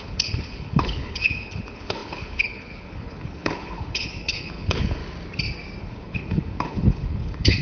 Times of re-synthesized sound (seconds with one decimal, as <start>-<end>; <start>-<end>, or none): 0.0-5.0; 5.8-7.6